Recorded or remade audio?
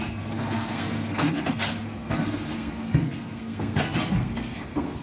remade